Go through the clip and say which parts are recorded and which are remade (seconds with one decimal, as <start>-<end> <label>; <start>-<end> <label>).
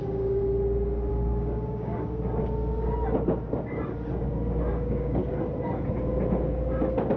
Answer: 0.0-0.4 remade; 0.4-1.1 recorded; 1.1-1.9 remade; 1.9-4.7 recorded; 4.7-5.2 remade; 5.2-7.2 recorded